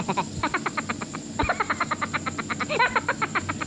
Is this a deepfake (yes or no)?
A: no